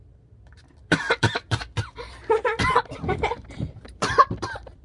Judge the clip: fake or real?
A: fake